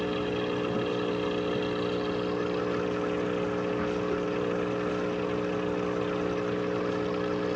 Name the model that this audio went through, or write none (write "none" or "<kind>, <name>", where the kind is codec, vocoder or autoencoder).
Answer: none